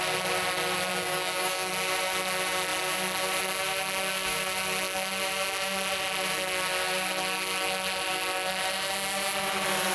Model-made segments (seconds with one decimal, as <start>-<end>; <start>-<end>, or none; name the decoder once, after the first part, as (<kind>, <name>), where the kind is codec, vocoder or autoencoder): 0.9-1.7 (codec, DAC)